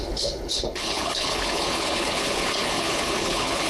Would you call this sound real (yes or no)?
no